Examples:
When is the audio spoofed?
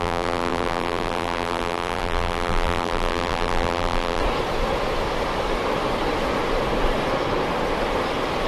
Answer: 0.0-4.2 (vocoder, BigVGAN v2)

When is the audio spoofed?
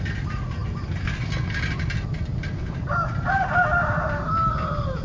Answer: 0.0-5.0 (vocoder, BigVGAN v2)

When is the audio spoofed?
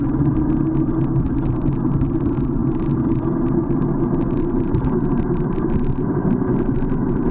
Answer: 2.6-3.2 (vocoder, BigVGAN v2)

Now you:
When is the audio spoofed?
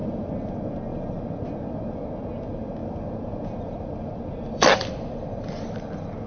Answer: 0.0-0.5 (vocoder, BigVGAN v2); 0.9-1.5; 2.8-4.9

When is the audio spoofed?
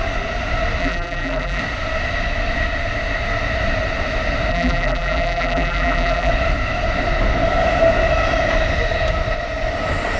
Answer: 0.8-1.6 (vocoder, BigVGAN v2); 4.5-6.3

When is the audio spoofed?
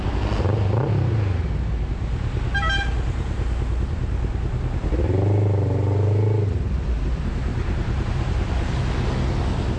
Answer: 7.5-8.8 (vocoder, BigVGAN v2)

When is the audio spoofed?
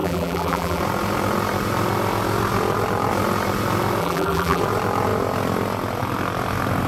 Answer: 0.0-0.8 (vocoder, BigVGAN v2); 4.0-4.6